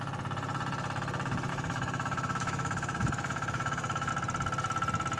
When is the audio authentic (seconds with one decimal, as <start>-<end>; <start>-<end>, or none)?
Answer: 0.0-1.5; 4.1-5.2